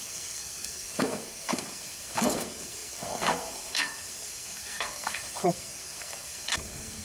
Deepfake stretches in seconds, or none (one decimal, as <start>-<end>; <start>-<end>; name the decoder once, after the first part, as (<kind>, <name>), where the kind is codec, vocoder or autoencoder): 0.0-7.0 (codec, SNAC)